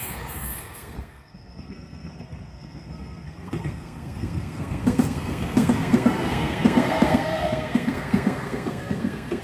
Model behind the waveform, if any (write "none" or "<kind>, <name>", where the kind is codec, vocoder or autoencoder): codec, SNAC